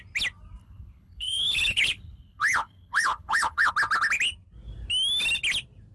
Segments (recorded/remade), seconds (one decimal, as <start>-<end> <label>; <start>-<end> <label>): 0.0-0.6 recorded; 0.6-3.7 remade; 3.7-5.9 recorded